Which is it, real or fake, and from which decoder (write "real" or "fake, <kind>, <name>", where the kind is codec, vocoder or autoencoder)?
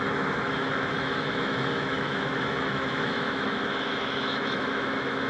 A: fake, autoencoder, DAC-VAE